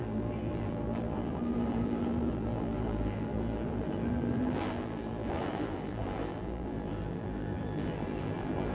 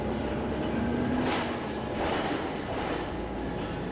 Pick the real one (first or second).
second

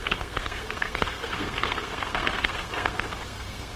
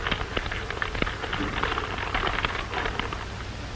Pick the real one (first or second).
second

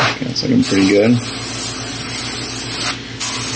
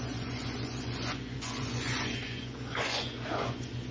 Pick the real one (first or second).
first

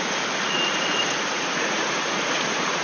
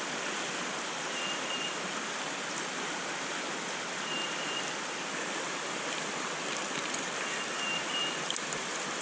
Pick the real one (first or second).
second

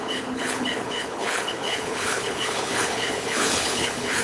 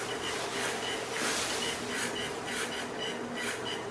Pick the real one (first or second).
second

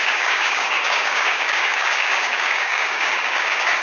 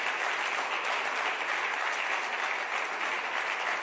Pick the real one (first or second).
second